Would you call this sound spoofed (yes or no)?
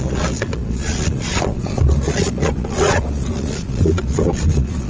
yes